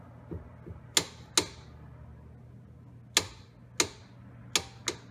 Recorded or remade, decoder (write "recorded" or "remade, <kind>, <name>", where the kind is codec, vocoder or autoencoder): recorded